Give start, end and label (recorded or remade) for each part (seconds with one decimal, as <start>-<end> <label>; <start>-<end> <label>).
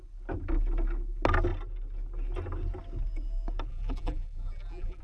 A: 0.0-3.7 recorded; 3.7-5.0 remade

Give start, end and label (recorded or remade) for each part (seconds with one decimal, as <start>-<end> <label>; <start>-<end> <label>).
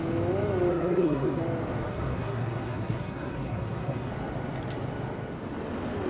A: 0.0-0.7 recorded; 0.7-1.4 remade; 1.4-1.9 recorded; 1.9-4.1 remade; 4.1-6.1 recorded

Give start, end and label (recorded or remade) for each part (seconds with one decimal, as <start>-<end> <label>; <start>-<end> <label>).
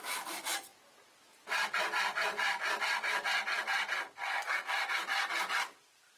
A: 0.0-6.2 recorded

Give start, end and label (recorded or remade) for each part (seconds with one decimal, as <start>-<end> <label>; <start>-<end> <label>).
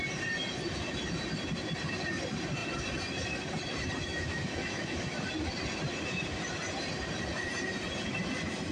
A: 0.0-4.0 recorded; 4.0-5.2 remade; 5.2-8.7 recorded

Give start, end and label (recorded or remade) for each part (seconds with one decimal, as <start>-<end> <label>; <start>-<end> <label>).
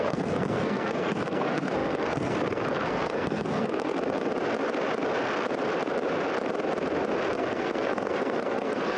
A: 0.0-4.3 remade; 4.3-7.3 recorded; 7.3-9.0 remade